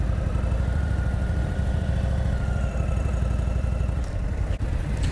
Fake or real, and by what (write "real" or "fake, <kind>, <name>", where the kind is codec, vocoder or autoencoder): fake, vocoder, BigVGAN v2